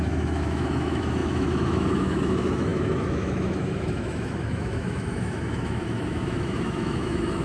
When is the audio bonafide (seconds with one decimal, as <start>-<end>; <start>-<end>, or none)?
none

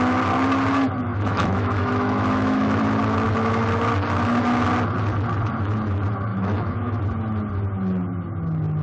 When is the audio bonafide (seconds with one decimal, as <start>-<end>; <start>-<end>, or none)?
0.0-1.1; 2.8-6.3; 7.0-8.8

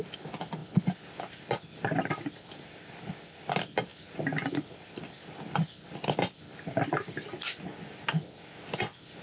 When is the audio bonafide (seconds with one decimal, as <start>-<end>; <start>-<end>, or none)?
0.0-9.2

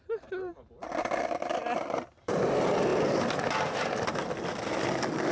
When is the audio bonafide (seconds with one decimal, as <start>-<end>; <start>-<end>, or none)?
0.0-0.5; 2.4-2.9; 4.1-5.3

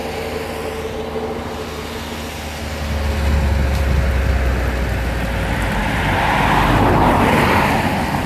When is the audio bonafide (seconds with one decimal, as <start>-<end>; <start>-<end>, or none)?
1.5-5.8; 7.7-8.3